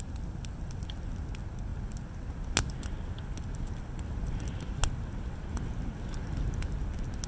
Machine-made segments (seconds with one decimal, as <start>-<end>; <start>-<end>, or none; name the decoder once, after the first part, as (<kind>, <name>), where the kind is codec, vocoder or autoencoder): none